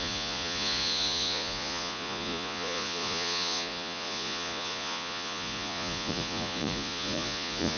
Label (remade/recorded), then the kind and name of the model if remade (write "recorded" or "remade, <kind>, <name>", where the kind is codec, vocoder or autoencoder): remade, vocoder, Vocos